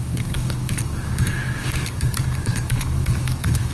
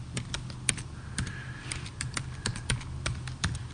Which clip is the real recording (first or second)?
second